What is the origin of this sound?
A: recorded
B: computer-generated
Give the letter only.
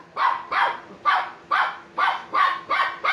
A